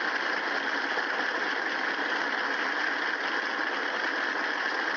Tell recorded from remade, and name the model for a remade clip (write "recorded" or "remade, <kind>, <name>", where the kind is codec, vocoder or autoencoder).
recorded